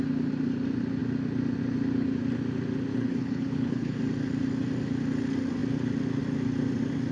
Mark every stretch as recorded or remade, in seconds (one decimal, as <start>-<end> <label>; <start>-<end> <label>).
0.0-2.9 recorded; 2.9-4.0 remade; 4.0-7.1 recorded